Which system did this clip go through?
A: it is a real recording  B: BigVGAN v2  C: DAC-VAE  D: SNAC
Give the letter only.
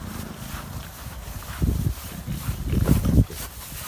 A